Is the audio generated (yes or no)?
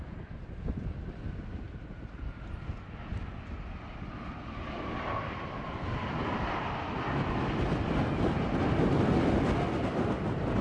no